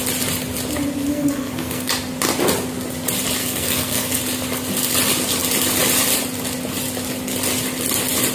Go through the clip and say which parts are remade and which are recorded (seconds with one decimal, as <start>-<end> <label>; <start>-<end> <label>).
0.0-1.1 recorded; 1.1-1.9 remade; 1.9-3.4 recorded; 3.4-4.2 remade; 4.2-8.3 recorded